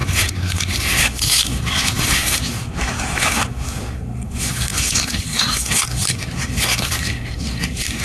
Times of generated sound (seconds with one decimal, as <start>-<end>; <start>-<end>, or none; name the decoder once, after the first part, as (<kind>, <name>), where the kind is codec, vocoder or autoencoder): 0.0-8.0 (codec, SNAC)